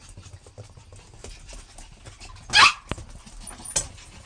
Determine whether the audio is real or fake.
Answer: real